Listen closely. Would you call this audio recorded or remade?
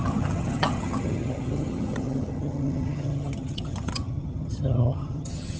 remade